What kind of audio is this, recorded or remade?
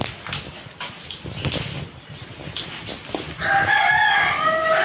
recorded